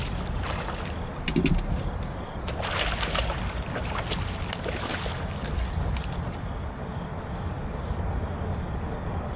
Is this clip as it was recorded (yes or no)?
yes